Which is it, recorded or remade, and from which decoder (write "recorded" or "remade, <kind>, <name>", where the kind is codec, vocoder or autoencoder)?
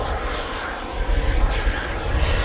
recorded